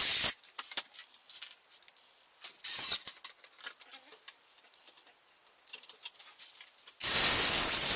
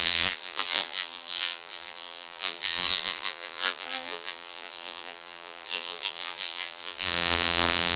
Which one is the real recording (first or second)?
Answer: first